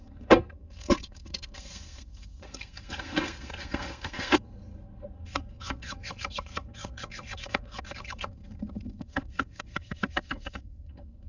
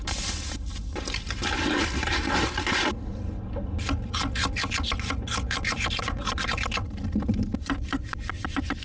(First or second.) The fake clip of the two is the first